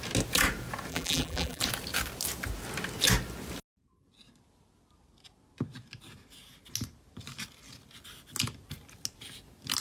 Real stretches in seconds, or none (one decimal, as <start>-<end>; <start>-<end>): 0.0-0.9; 1.6-9.8